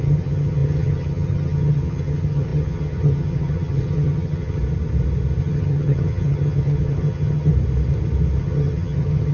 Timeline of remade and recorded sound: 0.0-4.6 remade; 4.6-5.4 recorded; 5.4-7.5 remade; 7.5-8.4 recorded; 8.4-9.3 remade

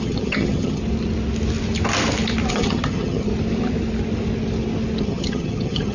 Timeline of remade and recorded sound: 0.0-0.8 remade; 0.8-2.5 recorded; 2.5-3.3 remade; 3.3-5.0 recorded; 5.0-5.9 remade

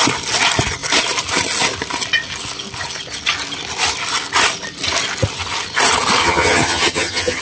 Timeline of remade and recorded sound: 0.0-6.2 recorded; 6.2-7.4 remade

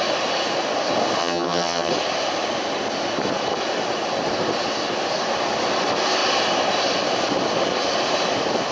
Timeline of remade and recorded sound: 0.0-1.2 recorded; 1.2-1.9 remade; 1.9-8.7 recorded

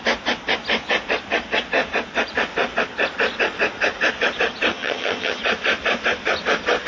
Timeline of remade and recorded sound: 0.0-4.7 recorded; 4.7-5.4 remade; 5.4-6.9 recorded

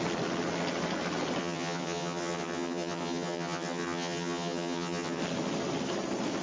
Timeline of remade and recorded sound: 0.0-1.4 recorded; 1.4-5.2 remade; 5.2-6.4 recorded

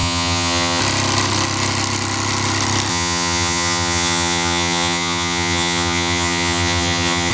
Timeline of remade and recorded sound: 0.0-0.8 remade; 0.8-2.9 recorded; 2.9-7.3 remade